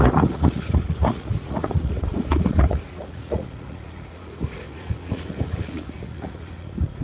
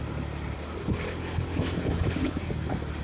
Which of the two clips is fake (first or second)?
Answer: first